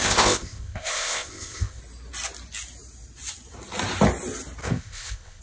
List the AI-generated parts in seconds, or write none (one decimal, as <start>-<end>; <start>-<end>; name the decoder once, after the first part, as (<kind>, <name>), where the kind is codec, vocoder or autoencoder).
0.0-1.8 (codec, ZipCodec); 4.6-5.4